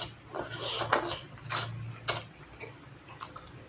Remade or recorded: recorded